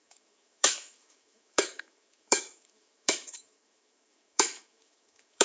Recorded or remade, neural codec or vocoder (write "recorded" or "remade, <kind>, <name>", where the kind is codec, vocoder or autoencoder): remade, autoencoder, DAC-VAE